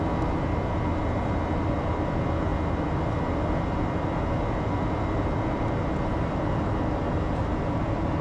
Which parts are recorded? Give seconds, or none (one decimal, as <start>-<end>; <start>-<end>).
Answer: 0.0-8.2